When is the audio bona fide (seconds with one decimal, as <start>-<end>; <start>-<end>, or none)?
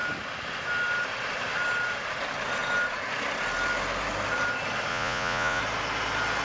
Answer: 0.0-4.9; 5.6-6.4